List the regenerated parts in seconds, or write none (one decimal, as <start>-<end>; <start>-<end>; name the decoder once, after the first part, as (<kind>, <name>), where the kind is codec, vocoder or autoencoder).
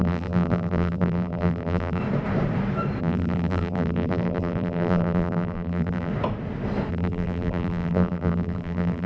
0.0-2.0 (vocoder, BigVGAN v2); 3.0-6.1; 6.9-9.1